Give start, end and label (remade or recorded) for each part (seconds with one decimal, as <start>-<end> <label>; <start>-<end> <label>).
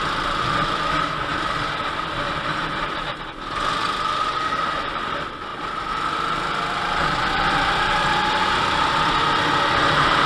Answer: 0.0-1.3 remade; 1.3-2.9 recorded; 2.9-10.3 remade